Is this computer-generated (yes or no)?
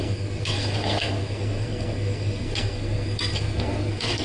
yes